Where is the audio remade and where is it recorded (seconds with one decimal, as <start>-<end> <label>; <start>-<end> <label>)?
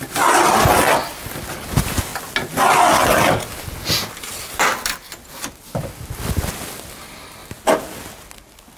0.0-2.1 remade; 2.1-4.3 recorded; 4.3-7.4 remade; 7.4-8.3 recorded; 8.3-8.8 remade